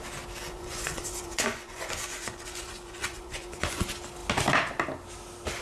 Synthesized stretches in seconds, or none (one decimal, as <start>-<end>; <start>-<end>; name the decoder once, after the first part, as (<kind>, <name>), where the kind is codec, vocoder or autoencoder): 0.4-3.8 (vocoder, Vocos)